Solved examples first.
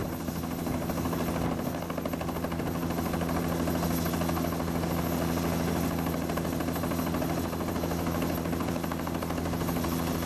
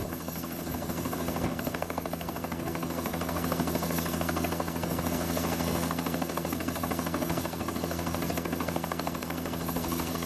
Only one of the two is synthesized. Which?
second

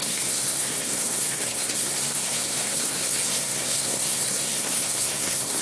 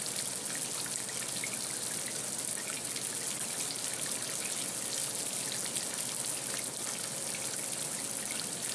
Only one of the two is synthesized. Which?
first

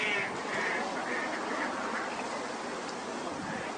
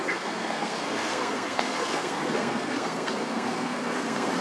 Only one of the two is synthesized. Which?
second